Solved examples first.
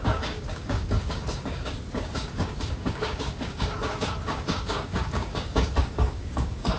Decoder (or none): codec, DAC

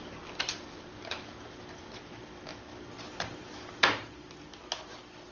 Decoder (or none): none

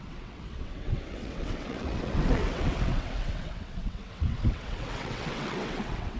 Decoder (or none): vocoder, WaveNeXt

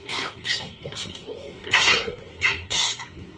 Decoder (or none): codec, SNAC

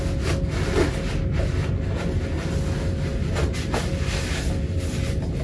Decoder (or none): none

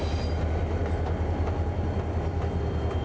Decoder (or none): none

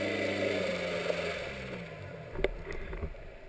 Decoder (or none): none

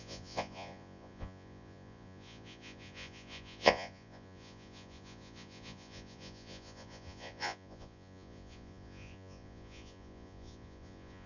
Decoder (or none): vocoder, Vocos